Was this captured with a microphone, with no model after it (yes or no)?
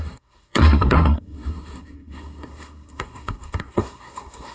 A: no